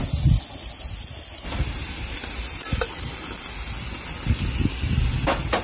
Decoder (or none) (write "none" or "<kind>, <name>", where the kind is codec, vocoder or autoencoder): none